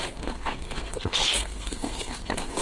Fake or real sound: fake